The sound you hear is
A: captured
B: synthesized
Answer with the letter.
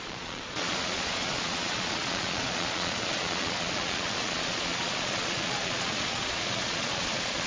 B